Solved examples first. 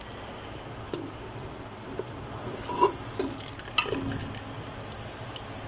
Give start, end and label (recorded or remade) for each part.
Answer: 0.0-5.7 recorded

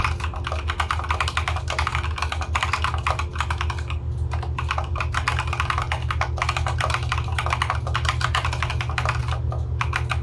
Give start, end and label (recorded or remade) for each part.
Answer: 0.0-10.2 recorded